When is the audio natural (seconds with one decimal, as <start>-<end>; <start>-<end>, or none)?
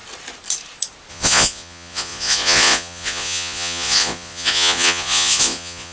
0.0-1.1